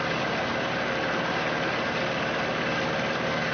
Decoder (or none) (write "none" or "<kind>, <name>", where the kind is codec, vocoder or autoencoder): none